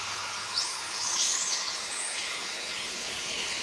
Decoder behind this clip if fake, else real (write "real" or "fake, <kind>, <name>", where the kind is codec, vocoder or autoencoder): fake, codec, HILCodec